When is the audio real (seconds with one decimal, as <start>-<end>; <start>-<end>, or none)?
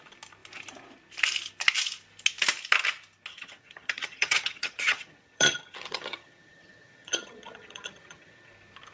0.0-3.3; 8.5-8.9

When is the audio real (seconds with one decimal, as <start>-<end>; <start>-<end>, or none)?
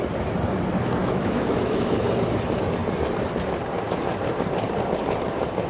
0.0-1.0; 1.9-5.7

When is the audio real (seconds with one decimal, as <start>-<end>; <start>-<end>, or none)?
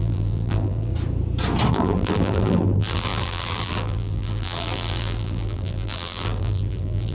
0.9-1.7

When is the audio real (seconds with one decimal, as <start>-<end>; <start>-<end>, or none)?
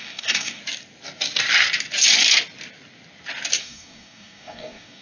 0.6-3.6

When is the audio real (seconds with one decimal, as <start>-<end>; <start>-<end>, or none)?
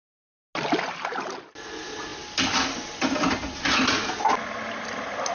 0.0-5.3